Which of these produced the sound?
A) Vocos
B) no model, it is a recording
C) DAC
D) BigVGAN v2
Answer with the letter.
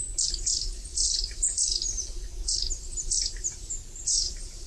D